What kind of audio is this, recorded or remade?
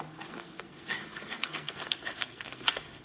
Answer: remade